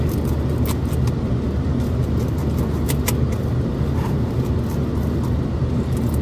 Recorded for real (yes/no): yes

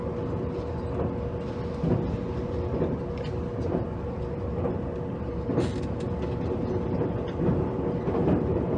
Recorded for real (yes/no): yes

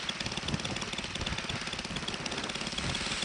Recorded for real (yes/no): yes